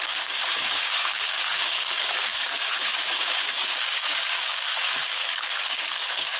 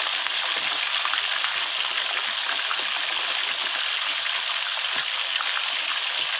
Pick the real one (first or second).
second